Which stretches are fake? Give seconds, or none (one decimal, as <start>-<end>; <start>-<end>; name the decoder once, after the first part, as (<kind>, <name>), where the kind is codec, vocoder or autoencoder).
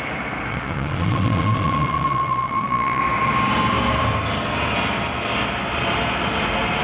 0.5-3.0 (vocoder, Vocos)